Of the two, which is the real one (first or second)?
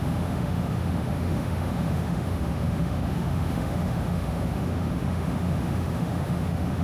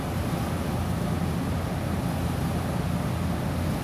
second